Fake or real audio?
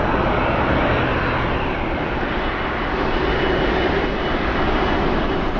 real